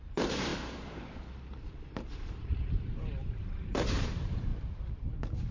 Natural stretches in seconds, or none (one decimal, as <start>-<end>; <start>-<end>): 4.5-5.5